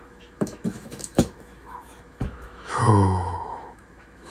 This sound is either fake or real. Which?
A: fake